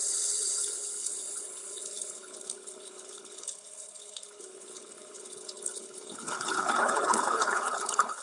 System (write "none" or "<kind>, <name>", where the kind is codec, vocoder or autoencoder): codec, HILCodec